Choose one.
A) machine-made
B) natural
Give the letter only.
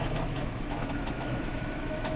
A